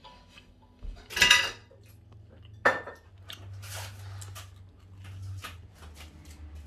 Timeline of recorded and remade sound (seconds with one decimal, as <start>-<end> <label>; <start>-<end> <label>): 0.0-1.1 remade; 1.1-6.7 recorded